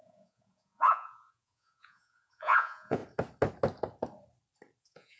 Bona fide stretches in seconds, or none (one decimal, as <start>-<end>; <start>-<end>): 3.0-4.8